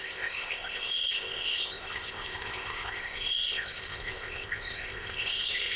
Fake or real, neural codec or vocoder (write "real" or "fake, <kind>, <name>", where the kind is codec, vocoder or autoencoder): fake, codec, ZipCodec